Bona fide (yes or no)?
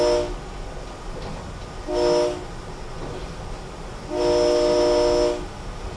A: yes